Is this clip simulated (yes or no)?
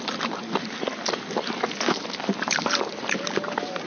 no